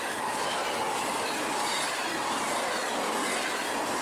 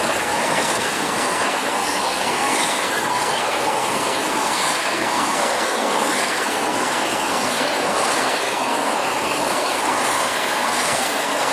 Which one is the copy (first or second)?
second